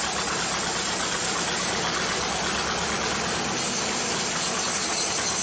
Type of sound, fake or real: real